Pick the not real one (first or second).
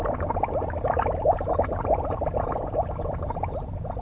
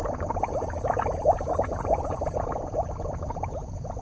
second